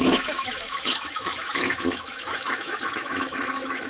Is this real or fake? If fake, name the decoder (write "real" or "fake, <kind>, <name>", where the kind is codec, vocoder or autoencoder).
fake, autoencoder, DAC-VAE